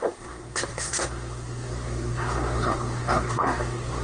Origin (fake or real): fake